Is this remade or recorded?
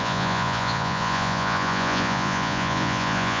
remade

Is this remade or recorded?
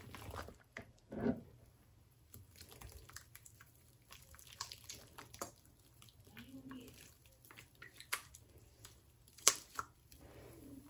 remade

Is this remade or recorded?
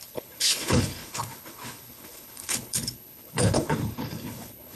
remade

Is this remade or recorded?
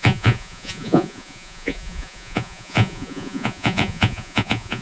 remade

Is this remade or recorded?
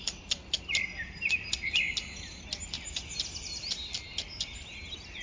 recorded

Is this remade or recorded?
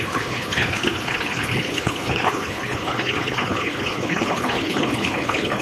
remade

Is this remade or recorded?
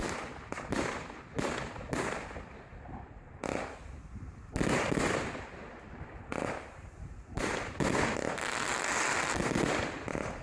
recorded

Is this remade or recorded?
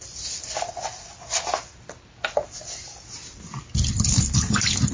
recorded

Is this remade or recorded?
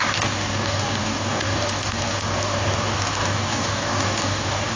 remade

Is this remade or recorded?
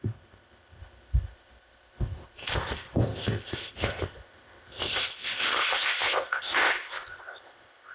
remade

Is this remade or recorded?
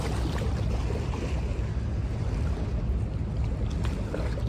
recorded